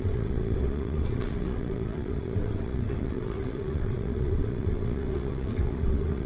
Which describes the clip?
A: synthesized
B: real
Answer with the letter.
A